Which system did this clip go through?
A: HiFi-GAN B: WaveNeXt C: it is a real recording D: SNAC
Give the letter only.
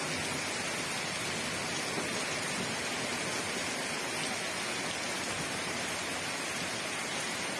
C